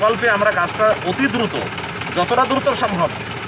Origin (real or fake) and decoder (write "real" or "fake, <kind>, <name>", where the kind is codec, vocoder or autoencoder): real